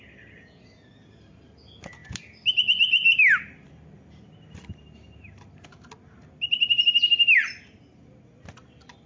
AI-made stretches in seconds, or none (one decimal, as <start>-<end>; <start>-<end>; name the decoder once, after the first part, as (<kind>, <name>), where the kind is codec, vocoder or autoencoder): none